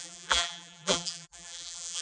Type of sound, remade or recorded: remade